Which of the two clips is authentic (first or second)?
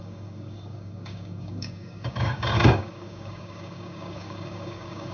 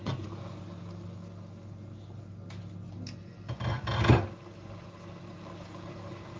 second